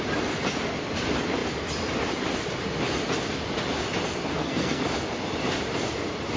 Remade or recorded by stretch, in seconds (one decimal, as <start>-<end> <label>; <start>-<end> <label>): 0.0-4.3 recorded; 4.3-4.8 remade; 4.8-6.4 recorded